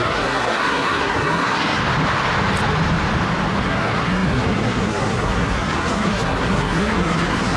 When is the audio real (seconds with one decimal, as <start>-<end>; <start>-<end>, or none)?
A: 1.8-3.6